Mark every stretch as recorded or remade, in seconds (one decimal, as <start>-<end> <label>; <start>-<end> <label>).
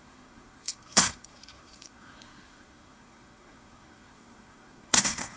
0.0-5.4 remade